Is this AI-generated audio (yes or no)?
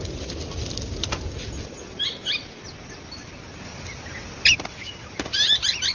no